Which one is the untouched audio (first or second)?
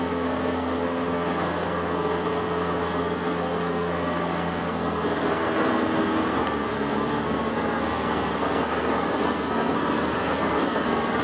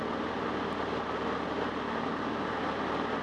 second